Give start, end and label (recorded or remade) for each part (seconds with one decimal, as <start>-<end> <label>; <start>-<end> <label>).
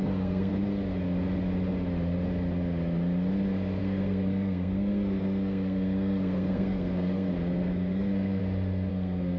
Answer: 0.0-0.5 remade; 0.5-3.8 recorded; 3.8-8.4 remade; 8.4-8.9 recorded; 8.9-9.4 remade